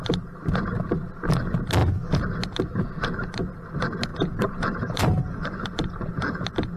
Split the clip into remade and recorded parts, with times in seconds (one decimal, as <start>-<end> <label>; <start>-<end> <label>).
0.0-4.1 recorded; 4.1-6.1 remade; 6.1-6.8 recorded